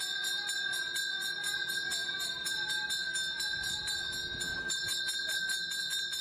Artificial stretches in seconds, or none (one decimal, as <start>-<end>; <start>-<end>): 2.0-2.9; 4.5-5.0